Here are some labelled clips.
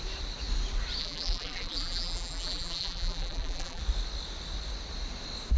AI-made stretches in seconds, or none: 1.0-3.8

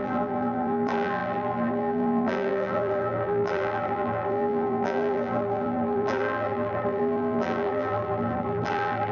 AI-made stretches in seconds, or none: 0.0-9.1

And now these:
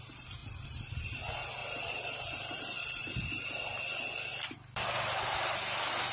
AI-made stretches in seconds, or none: 0.4-1.2; 1.6-3.8; 4.3-4.8

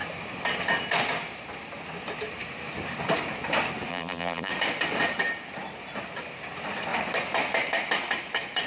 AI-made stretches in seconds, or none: 3.9-4.5

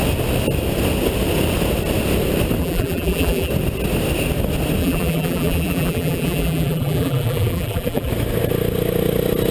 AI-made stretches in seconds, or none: 2.6-3.5; 4.8-8.1

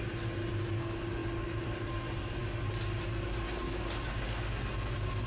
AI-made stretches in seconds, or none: 1.2-1.9

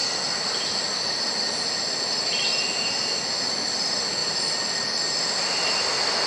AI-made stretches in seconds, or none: 4.2-4.8

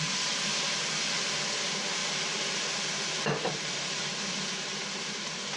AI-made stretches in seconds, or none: 2.0-5.6